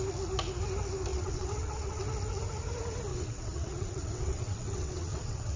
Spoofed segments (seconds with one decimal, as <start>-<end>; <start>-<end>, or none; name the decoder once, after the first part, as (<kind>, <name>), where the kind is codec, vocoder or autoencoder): 1.1-2.0 (vocoder, WaveNeXt); 3.1-5.6

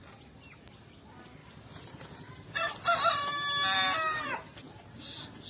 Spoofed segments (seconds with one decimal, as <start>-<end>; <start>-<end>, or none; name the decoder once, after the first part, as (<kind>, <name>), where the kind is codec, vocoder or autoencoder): none

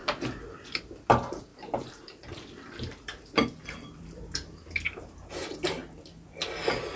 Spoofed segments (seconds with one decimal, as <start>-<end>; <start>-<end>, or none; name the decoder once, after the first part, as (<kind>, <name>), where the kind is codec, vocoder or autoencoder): 0.0-0.8 (vocoder, BigVGAN v2); 1.5-5.3

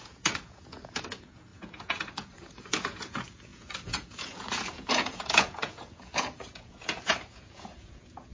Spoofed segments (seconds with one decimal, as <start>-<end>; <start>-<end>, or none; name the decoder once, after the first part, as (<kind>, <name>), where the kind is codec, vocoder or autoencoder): 0.0-8.3 (vocoder, Vocos)

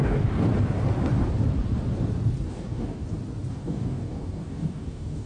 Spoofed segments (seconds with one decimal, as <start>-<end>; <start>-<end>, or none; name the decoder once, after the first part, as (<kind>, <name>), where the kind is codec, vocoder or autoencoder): 0.0-0.5 (codec, DAC); 2.5-3.0; 3.5-5.3